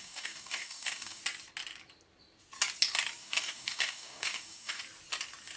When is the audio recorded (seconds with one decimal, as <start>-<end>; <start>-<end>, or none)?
1.2-3.2; 4.8-5.6